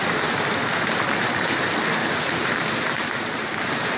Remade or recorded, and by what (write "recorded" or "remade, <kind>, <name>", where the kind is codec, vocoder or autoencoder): remade, vocoder, BigVGAN v2